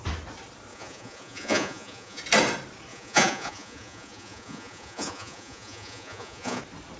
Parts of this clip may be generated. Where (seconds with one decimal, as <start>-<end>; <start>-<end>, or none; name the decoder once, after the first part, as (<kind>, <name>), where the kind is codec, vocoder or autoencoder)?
0.7-2.2 (vocoder, Vocos); 2.9-6.6

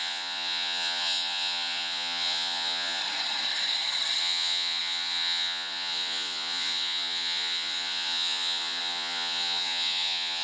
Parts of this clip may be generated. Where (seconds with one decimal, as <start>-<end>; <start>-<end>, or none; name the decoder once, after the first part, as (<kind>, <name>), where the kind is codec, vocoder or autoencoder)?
0.0-3.0 (vocoder, Vocos); 4.2-10.4

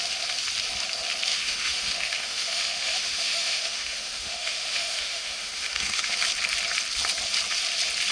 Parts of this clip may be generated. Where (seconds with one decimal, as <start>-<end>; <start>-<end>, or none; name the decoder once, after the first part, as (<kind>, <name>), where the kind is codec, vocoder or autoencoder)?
1.3-6.2 (autoencoder, DAC-VAE)

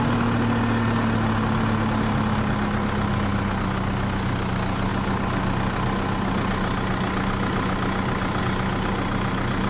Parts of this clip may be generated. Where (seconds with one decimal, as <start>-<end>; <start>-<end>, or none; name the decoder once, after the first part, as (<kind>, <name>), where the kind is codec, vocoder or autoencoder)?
none